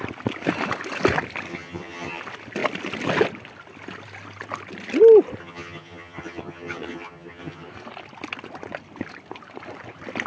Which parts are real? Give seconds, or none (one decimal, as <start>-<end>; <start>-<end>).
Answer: 0.0-1.5; 2.2-5.4; 7.7-10.3

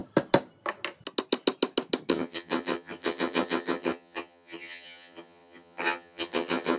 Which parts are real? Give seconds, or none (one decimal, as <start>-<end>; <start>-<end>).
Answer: 0.0-2.1